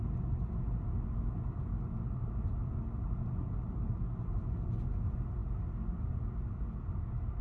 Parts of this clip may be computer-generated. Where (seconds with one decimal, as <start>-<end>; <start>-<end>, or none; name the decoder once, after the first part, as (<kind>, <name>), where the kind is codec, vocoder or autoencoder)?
none